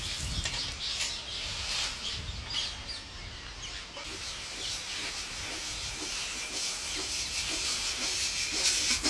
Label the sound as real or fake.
real